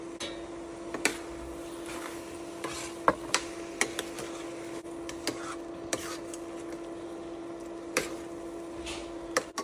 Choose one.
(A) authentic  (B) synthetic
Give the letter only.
A